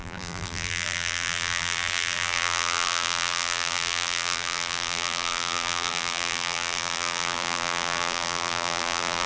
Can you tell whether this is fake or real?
fake